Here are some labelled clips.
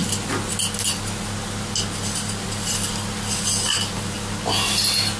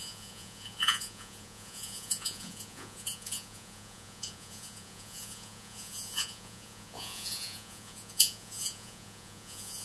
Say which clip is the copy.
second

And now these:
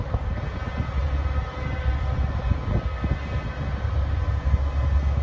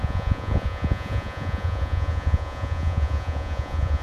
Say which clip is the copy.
second